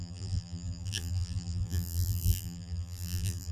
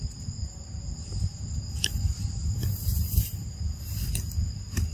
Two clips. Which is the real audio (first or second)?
second